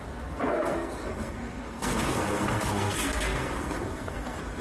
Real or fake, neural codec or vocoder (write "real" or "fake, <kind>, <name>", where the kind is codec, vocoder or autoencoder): fake, codec, SNAC